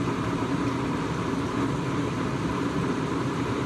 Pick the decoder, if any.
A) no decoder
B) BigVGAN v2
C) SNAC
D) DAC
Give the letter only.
B